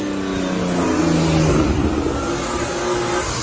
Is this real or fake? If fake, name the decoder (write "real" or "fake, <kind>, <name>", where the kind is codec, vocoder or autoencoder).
real